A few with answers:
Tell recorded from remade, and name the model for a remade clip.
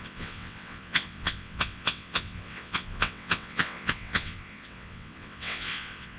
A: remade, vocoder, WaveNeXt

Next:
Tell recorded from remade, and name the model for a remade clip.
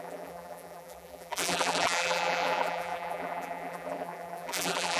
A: remade, vocoder, BigVGAN v2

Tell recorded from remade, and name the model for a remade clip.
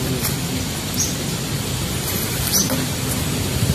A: recorded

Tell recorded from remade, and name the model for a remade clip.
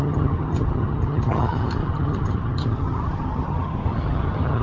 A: remade, vocoder, HiFi-GAN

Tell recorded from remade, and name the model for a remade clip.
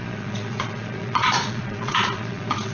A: remade, vocoder, Vocos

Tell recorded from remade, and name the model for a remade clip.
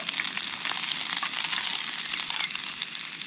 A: recorded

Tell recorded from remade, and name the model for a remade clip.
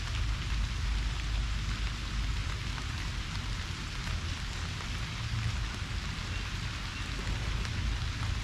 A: recorded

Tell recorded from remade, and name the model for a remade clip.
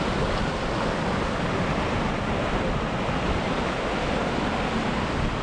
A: recorded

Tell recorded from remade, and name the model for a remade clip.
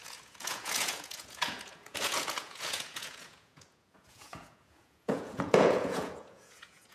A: remade, vocoder, Vocos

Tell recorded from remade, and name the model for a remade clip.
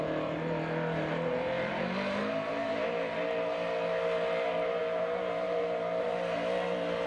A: remade, vocoder, BigVGAN v2